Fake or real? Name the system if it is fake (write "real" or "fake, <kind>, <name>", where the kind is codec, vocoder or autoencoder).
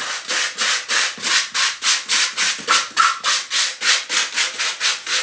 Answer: real